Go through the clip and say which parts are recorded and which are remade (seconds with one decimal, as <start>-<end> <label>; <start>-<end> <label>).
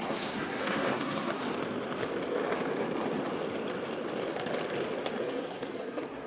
0.0-1.4 remade; 1.4-5.2 recorded; 5.2-6.3 remade